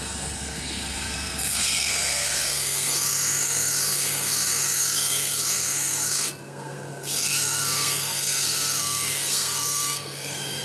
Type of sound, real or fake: fake